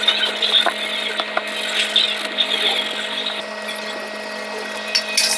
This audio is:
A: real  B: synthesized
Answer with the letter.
A